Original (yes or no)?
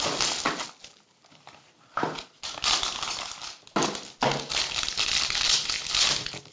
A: yes